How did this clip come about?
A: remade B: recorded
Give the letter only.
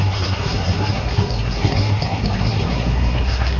A